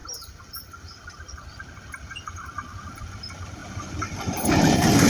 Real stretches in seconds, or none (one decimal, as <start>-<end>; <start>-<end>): 3.1-5.1